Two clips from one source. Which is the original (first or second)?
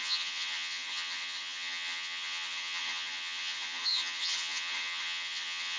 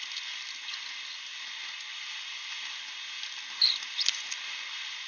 second